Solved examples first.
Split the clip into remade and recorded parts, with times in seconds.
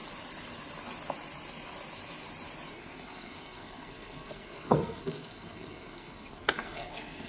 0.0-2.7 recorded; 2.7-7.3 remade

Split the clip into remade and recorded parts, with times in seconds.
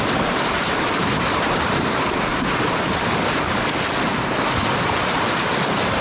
0.0-2.3 remade; 2.3-4.7 recorded; 4.7-6.0 remade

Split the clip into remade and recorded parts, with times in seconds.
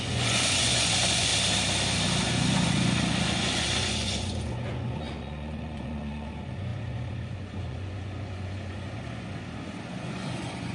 0.0-1.3 remade; 1.3-2.2 recorded; 2.2-10.7 remade